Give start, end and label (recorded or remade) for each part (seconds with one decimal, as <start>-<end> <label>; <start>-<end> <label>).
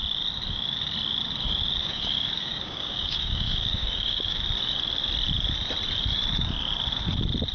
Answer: 0.0-1.8 recorded; 1.8-4.4 remade; 4.4-7.5 recorded